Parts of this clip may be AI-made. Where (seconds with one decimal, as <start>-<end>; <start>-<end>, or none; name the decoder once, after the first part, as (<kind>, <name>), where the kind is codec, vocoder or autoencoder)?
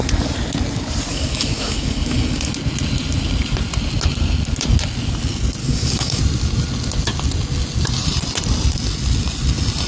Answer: 1.1-2.5 (codec, DAC); 5.6-6.2